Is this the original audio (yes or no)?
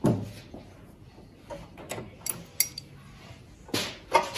yes